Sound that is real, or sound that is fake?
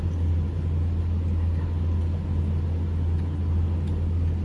real